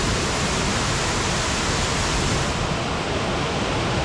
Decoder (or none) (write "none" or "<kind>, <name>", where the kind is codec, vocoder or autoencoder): none